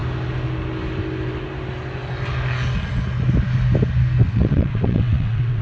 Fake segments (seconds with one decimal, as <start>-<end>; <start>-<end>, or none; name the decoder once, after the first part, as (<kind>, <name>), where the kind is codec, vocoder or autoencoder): 4.2-5.6 (vocoder, WaveNeXt)